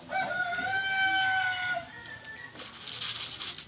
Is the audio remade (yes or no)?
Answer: no